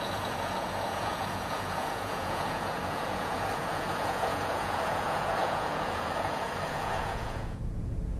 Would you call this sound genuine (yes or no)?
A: no